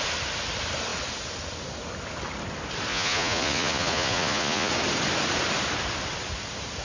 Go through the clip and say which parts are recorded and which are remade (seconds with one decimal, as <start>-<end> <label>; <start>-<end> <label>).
0.0-2.9 recorded; 2.9-4.7 remade; 4.7-6.8 recorded